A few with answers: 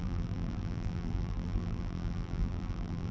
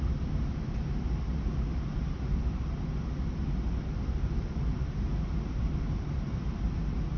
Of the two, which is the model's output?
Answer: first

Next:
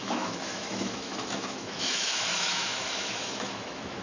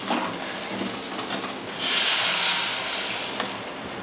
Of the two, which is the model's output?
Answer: first